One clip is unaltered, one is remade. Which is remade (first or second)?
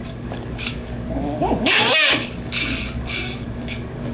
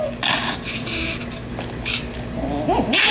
first